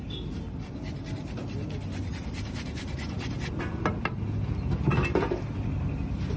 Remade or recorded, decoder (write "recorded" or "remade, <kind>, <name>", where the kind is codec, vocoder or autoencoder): recorded